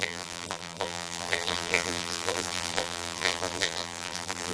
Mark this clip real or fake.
fake